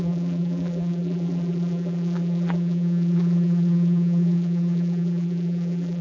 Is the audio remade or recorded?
remade